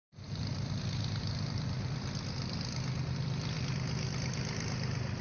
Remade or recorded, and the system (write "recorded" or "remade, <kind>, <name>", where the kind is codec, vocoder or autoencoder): recorded